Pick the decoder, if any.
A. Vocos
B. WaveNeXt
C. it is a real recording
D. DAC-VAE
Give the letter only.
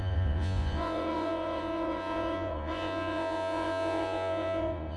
A